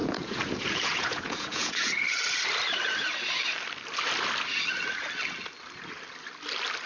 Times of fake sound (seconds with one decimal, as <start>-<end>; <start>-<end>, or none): 0.0-1.9